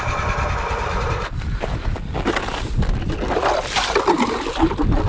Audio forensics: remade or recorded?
recorded